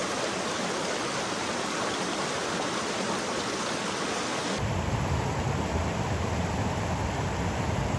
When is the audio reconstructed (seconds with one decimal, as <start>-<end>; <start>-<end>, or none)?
0.0-0.5